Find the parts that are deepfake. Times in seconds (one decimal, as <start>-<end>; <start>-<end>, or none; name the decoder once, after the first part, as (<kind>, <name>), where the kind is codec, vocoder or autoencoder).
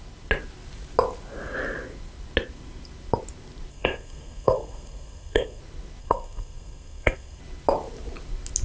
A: 3.7-5.6 (codec, SNAC); 6.0-7.4